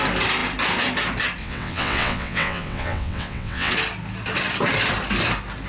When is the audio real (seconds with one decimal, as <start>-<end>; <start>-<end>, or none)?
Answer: 0.0-1.4; 3.7-5.7